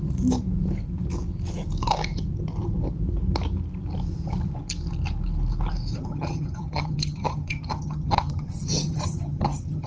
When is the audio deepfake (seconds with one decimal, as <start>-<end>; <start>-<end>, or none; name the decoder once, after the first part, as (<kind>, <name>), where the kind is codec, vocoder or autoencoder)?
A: 6.0-9.9 (vocoder, HiFi-GAN)